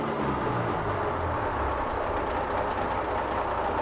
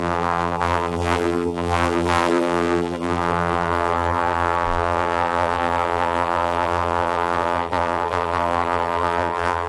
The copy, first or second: second